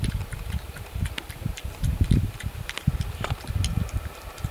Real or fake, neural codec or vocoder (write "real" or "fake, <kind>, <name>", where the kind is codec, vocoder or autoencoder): fake, vocoder, BigVGAN v2